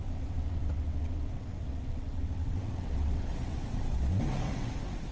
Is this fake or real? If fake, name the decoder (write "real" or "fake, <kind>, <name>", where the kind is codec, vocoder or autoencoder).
fake, vocoder, WaveNeXt